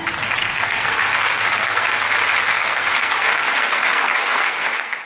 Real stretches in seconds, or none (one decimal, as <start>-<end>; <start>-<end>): 0.0-0.4; 2.1-2.5